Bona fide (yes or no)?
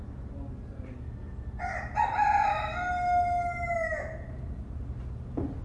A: yes